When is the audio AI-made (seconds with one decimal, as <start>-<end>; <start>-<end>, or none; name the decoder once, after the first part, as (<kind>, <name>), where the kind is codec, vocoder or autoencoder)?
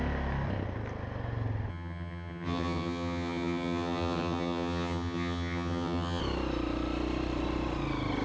1.7-6.2 (vocoder, HiFi-GAN)